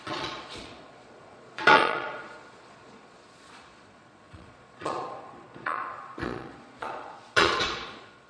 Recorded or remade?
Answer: remade